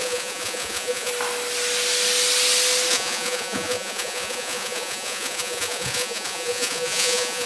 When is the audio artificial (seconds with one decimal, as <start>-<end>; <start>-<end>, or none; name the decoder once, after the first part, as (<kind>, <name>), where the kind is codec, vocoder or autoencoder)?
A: 0.0-1.1 (vocoder, Vocos); 2.9-7.5